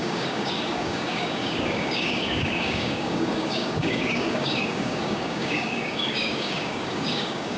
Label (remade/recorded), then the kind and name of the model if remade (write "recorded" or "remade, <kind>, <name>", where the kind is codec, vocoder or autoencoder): remade, codec, DAC